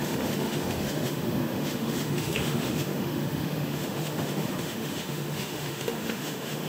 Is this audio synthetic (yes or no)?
yes